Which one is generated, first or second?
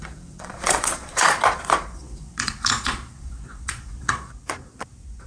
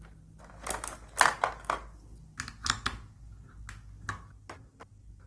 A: first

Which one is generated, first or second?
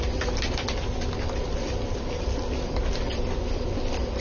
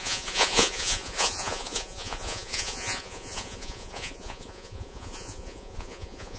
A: second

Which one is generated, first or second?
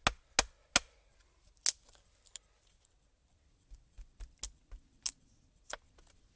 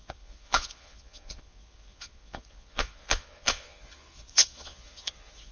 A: second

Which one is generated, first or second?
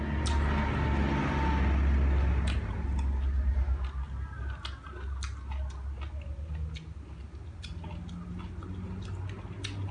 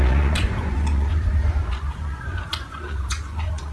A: second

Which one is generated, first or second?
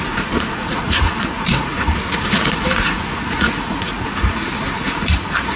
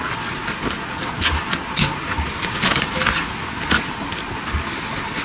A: first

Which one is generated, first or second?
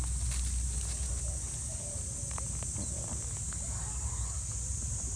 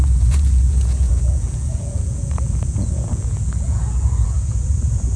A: second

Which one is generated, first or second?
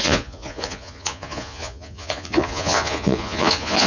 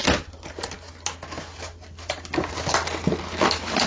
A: first